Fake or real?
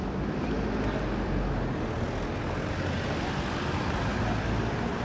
real